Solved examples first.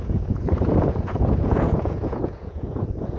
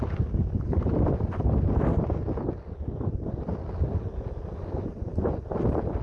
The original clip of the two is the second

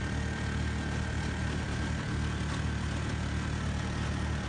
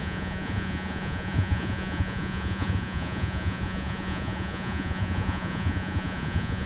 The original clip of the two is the first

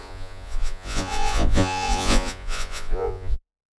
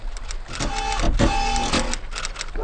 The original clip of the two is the second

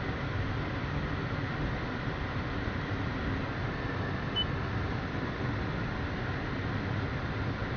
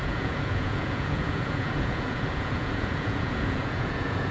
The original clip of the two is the first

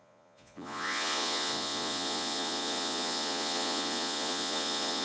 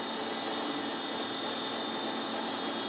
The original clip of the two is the second